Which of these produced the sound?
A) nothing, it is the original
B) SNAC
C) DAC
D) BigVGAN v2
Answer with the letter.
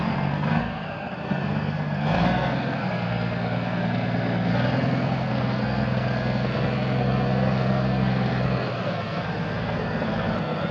B